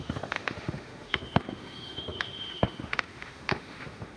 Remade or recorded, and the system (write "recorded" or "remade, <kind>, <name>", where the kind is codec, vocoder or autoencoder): remade, autoencoder, DAC-VAE